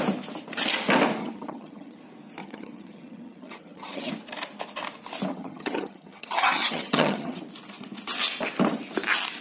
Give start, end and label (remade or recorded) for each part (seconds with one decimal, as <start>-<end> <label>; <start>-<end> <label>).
0.0-1.2 recorded; 1.2-2.0 remade; 2.0-2.4 recorded; 2.4-4.1 remade; 4.1-5.3 recorded; 5.3-7.4 remade; 7.4-9.4 recorded